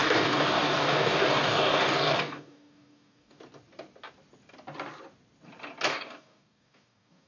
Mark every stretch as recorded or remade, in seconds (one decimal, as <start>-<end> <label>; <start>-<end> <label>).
0.0-3.4 remade; 3.4-5.9 recorded; 5.9-7.3 remade